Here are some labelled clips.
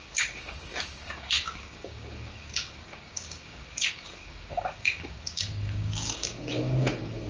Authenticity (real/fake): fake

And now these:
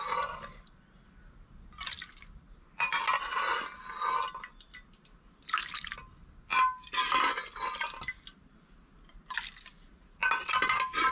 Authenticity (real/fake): real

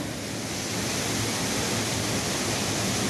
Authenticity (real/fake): real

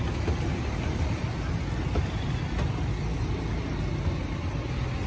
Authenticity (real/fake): real